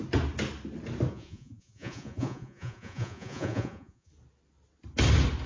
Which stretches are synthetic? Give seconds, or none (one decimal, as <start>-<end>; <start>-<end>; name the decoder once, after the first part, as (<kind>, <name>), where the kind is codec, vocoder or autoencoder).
1.1-4.1 (vocoder, Vocos)